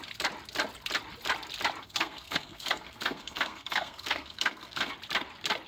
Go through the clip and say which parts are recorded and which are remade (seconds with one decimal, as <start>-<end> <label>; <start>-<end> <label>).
0.0-1.8 recorded; 1.8-4.9 remade; 4.9-5.7 recorded